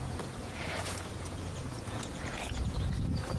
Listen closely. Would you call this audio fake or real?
fake